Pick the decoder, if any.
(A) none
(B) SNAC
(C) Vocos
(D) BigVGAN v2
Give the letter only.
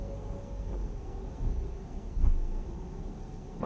B